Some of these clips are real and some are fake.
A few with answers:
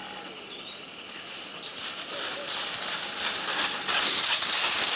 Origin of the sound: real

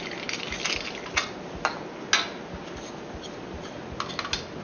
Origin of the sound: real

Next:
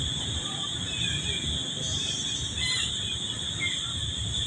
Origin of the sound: real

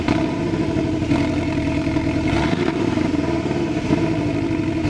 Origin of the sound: fake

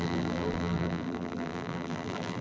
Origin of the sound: fake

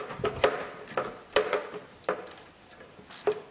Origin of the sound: real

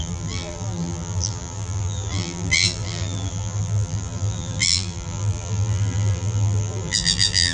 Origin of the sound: fake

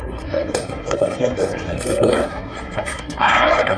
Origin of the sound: fake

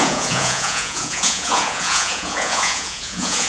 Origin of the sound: fake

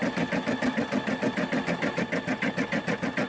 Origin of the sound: real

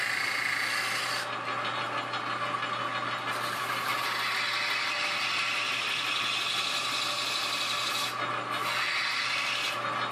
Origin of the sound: real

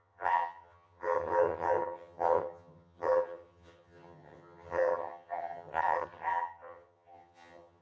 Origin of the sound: fake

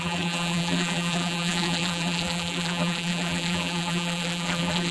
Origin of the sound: fake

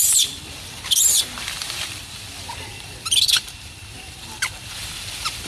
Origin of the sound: fake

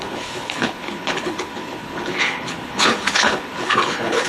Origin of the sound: fake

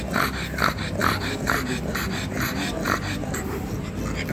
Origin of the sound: real